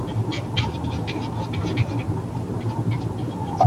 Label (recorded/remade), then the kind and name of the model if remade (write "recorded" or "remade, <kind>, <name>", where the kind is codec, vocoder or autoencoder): remade, vocoder, BigVGAN v2